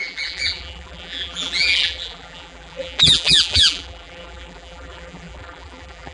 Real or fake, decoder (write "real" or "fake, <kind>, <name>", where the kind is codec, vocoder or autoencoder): fake, vocoder, BigVGAN v2